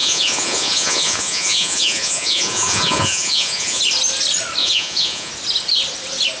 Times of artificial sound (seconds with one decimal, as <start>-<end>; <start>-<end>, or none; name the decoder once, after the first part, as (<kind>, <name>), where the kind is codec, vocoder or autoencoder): 0.0-3.8 (vocoder, Vocos); 4.6-5.3